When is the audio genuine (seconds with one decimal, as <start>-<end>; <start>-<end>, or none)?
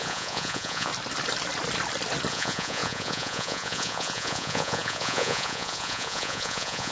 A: 0.9-2.3